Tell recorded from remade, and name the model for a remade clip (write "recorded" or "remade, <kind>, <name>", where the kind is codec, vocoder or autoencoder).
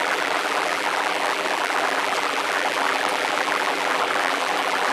remade, vocoder, BigVGAN v2